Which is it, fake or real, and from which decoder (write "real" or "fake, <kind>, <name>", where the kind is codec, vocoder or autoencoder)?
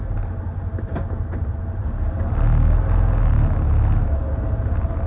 real